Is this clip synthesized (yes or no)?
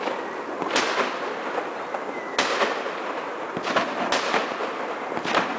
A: no